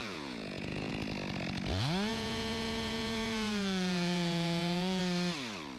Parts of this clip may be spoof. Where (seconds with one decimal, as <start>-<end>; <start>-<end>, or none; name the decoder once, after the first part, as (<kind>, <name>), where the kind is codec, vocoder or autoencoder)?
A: 0.0-0.9 (vocoder, Vocos); 2.1-5.0